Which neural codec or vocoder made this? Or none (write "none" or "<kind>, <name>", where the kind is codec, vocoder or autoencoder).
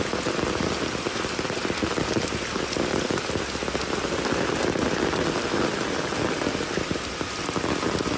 none